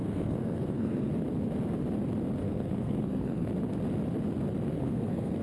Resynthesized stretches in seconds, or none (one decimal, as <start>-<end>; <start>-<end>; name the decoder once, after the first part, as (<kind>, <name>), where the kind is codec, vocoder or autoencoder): 0.0-1.1 (codec, SNAC); 2.4-3.5; 4.7-5.4